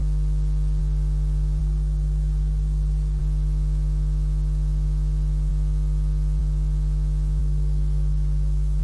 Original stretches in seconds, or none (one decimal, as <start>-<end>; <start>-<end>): 0.0-1.6; 3.2-7.4